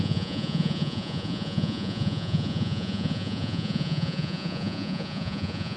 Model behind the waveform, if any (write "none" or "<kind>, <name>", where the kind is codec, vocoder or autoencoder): vocoder, Vocos